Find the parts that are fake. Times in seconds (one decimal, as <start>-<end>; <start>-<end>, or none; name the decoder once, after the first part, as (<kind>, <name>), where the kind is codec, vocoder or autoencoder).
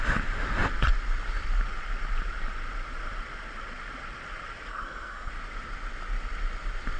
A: 4.7-5.3 (codec, SNAC)